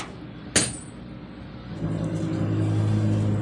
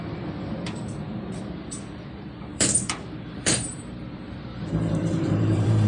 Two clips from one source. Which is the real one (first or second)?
first